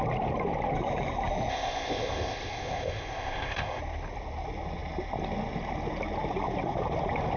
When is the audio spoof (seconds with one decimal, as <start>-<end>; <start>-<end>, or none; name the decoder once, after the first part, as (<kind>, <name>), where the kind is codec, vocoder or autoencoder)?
1.5-3.8 (codec, ZipCodec)